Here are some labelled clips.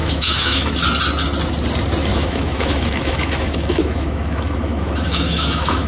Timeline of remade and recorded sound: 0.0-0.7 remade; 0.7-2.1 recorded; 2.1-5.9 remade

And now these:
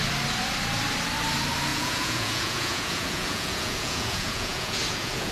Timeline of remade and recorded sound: 0.0-1.7 recorded; 1.7-5.3 remade

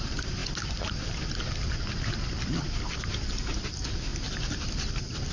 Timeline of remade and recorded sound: 0.0-5.3 remade

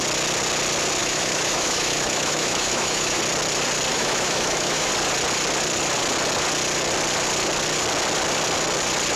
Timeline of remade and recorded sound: 0.0-1.0 recorded; 1.0-3.2 remade; 3.2-3.9 recorded; 3.9-4.9 remade; 4.9-9.2 recorded

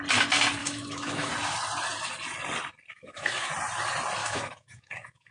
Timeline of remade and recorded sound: 0.0-0.6 recorded; 0.6-1.3 remade; 1.3-2.9 recorded; 2.9-3.5 remade; 3.5-4.2 recorded; 4.2-5.3 remade

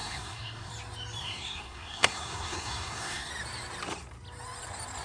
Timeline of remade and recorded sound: 0.0-0.7 remade; 0.7-1.2 recorded; 1.2-3.3 remade; 3.3-5.0 recorded